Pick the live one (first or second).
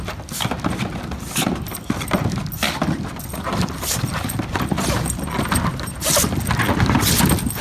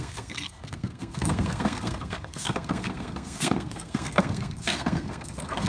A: first